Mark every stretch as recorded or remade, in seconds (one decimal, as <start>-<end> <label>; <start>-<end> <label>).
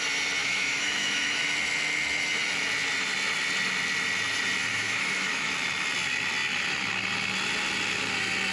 0.0-0.4 recorded; 0.4-1.4 remade; 1.4-4.7 recorded; 4.7-5.5 remade; 5.5-8.5 recorded